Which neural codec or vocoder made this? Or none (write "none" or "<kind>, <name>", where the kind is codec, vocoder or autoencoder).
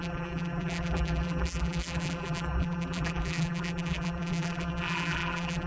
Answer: vocoder, BigVGAN v2